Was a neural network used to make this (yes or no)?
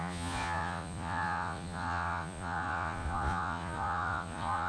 yes